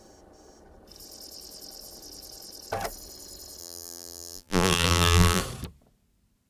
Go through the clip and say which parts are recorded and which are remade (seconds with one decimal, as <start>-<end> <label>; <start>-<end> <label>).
0.0-3.6 recorded; 3.6-5.4 remade; 5.4-6.5 recorded